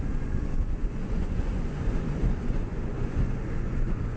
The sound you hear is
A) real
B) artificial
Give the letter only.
B